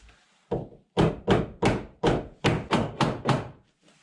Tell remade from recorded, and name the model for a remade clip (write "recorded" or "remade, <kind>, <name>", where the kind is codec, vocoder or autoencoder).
recorded